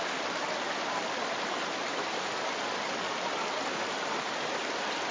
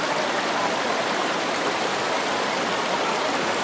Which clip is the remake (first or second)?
second